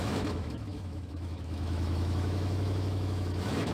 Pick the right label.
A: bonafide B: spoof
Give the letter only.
B